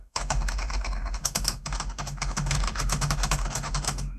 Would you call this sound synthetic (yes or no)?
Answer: yes